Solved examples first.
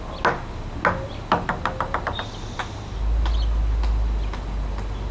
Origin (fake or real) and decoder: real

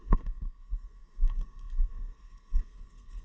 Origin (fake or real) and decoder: fake, codec, SNAC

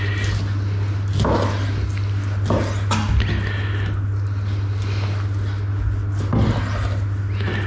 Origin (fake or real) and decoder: real